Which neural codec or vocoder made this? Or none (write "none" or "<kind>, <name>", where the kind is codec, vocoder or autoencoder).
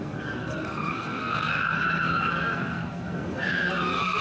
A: codec, SNAC